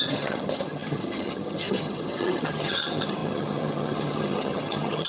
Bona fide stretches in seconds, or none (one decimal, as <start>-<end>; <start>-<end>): none